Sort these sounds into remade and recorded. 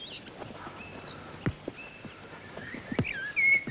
recorded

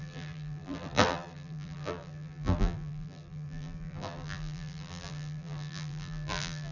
remade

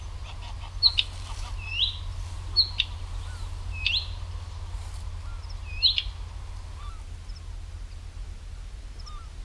recorded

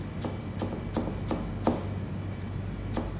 recorded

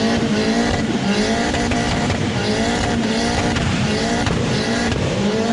remade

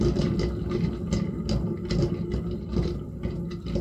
recorded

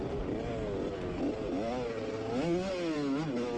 recorded